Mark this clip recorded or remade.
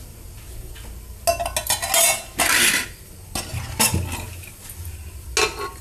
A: recorded